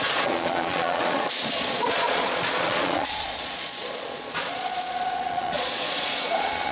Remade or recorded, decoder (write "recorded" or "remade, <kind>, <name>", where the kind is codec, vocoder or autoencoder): remade, vocoder, Vocos